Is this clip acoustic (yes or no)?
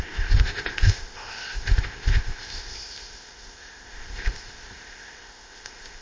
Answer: no